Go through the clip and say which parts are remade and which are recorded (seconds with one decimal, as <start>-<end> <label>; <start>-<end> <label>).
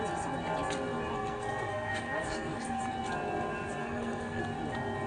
0.0-1.1 recorded; 1.1-2.8 remade; 2.8-3.8 recorded; 3.8-4.4 remade; 4.4-5.1 recorded